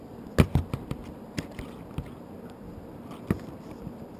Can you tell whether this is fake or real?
real